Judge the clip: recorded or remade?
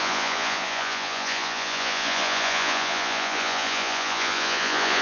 remade